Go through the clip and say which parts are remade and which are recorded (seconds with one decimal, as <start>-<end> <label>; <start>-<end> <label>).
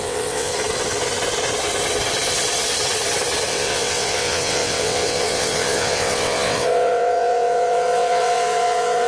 0.0-0.5 remade; 0.5-3.5 recorded; 3.5-9.1 remade